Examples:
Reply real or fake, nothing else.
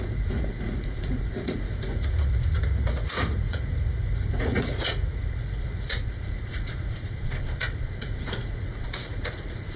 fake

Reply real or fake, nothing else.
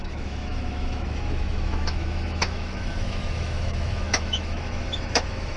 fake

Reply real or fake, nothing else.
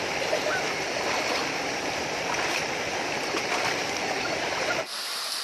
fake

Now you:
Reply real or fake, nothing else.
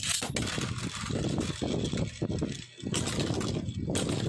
real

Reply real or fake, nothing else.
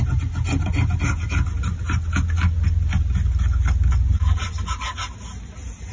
real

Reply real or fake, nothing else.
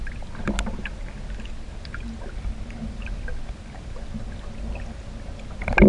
real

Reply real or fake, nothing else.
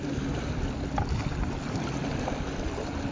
real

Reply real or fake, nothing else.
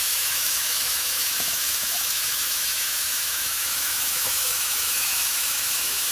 fake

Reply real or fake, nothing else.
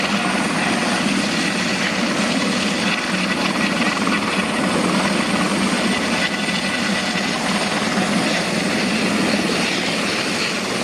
real